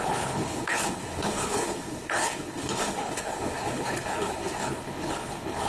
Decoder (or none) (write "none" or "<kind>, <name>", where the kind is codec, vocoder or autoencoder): codec, HILCodec